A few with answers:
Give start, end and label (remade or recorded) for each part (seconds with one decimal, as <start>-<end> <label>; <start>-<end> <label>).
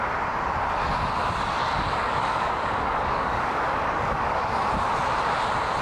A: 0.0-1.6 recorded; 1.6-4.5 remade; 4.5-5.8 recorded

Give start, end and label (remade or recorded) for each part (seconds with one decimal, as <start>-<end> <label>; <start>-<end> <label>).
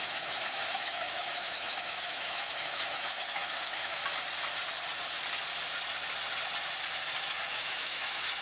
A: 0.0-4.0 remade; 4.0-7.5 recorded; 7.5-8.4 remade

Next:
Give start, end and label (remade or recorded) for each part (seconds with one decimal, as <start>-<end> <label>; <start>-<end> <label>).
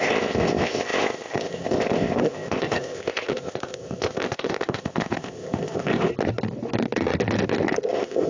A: 0.0-6.1 remade; 6.1-7.9 recorded; 7.9-8.3 remade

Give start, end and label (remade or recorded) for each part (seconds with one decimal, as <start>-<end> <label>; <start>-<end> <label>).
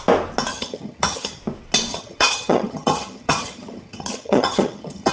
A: 0.0-0.5 recorded; 0.5-1.4 remade; 1.4-1.9 recorded; 1.9-5.1 remade